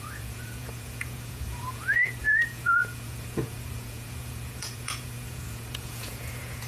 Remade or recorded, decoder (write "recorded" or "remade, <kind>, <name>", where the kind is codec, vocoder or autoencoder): remade, vocoder, Vocos